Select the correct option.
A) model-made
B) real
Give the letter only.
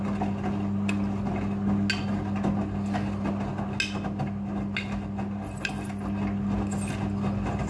B